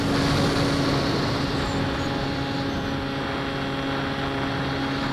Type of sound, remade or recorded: recorded